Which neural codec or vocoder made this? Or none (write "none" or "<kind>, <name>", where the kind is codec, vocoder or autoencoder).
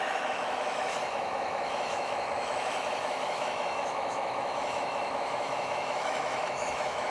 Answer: autoencoder, DAC-VAE